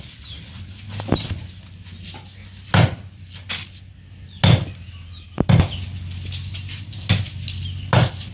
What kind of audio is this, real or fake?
real